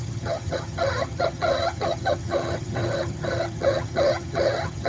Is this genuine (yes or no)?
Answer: no